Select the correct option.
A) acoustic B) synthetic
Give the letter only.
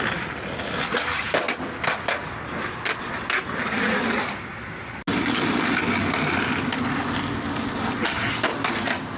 A